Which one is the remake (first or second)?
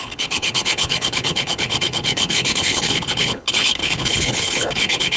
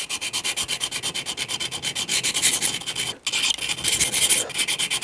first